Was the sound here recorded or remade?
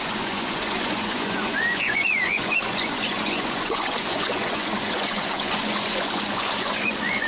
remade